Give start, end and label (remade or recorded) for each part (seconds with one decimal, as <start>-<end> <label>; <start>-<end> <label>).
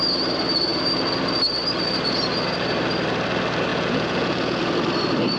0.0-3.7 recorded; 3.7-4.6 remade; 4.6-5.4 recorded